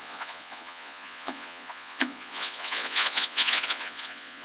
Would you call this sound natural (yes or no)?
no